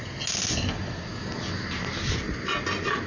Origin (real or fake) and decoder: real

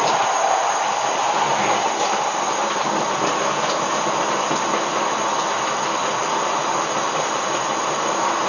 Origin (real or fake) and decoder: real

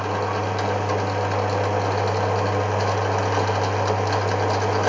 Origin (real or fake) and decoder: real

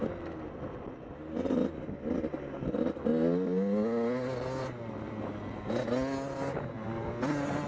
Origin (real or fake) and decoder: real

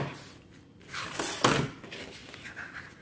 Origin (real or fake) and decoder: real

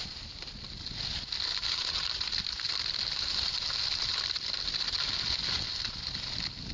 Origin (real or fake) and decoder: real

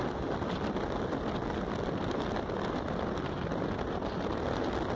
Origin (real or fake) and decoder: real